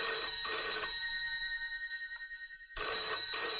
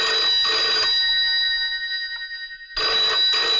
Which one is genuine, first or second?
second